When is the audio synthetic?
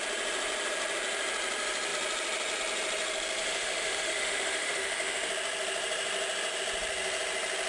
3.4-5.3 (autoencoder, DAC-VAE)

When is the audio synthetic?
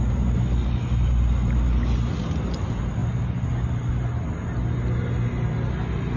none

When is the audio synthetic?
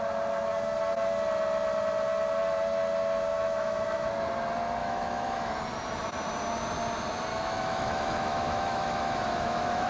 3.3-4.1 (autoencoder, DAC-VAE); 4.8-5.5; 7.3-9.9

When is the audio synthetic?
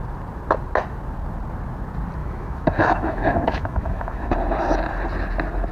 2.2-4.3 (autoencoder, DAC-VAE)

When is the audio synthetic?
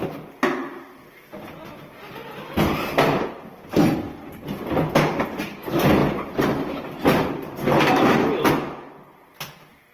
none